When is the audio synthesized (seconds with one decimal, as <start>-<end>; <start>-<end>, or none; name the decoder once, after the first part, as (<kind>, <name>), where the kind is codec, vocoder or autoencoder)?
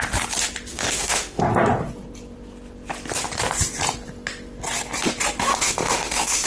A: 0.7-1.4 (autoencoder, DAC-VAE); 5.5-6.5